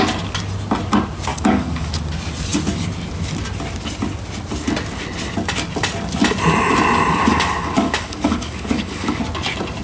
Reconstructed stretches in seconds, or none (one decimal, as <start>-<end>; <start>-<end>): 1.3-1.9; 7.3-9.2